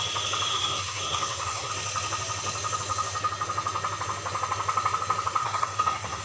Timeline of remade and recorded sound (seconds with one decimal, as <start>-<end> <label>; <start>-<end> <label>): 0.0-0.5 recorded; 0.5-1.7 remade; 1.7-5.4 recorded; 5.4-6.2 remade